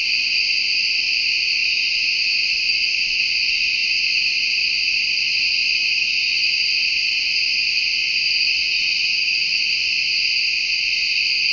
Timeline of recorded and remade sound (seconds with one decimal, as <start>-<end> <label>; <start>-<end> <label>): 0.0-1.6 recorded; 1.6-3.3 remade; 3.3-8.6 recorded; 8.6-9.6 remade; 9.6-11.5 recorded